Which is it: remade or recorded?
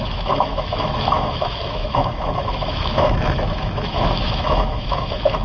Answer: remade